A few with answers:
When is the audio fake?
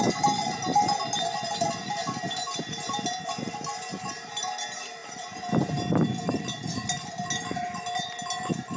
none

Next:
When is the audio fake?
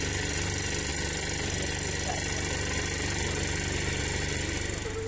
none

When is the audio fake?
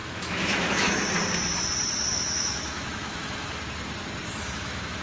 0.0-1.0; 2.1-3.6; 4.3-5.0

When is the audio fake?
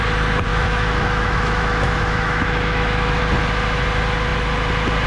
0.5-3.2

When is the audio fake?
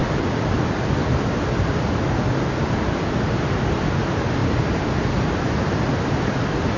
4.4-5.6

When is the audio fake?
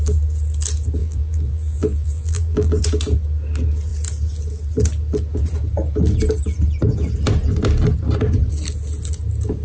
1.0-2.8